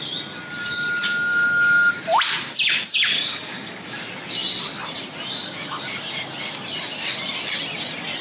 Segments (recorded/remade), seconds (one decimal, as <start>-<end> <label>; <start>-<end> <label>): 0.0-1.3 recorded; 1.3-1.9 remade; 1.9-2.9 recorded; 2.9-4.0 remade; 4.0-8.2 recorded